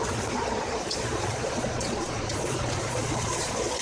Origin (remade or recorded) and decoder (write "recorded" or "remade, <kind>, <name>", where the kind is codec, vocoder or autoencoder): remade, vocoder, Vocos